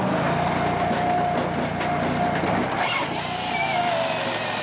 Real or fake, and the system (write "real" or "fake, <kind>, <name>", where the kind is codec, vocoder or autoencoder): real